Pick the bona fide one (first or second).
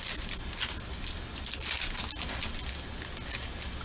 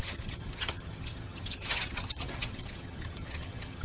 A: first